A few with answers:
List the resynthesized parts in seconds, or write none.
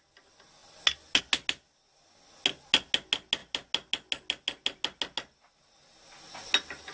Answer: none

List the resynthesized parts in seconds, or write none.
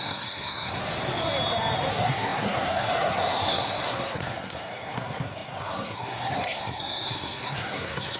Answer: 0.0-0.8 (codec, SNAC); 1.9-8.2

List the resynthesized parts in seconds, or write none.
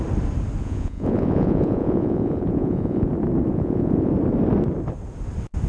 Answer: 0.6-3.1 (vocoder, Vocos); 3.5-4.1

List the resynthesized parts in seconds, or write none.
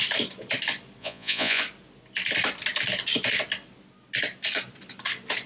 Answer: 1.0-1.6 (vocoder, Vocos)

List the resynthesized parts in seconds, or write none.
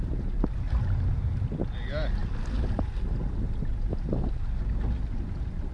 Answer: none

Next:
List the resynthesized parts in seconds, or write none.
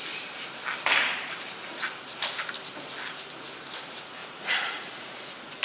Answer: 4.2-5.6 (vocoder, Vocos)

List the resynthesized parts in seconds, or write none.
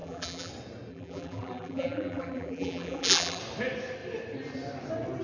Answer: 0.0-0.5 (vocoder, BigVGAN v2); 0.9-3.4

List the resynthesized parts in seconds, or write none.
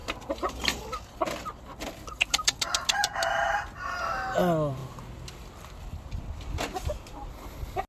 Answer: none